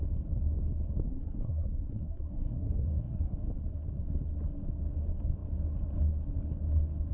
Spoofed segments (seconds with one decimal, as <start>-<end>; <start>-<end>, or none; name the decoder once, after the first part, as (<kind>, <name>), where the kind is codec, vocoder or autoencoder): 1.1-3.2 (codec, SNAC)